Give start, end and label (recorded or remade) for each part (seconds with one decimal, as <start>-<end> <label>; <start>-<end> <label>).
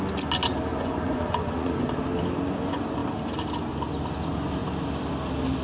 0.0-0.7 recorded; 0.7-2.0 remade; 2.0-5.6 recorded